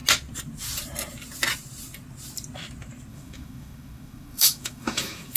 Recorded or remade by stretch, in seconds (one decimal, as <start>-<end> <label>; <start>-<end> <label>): 0.0-3.1 recorded; 3.1-5.4 remade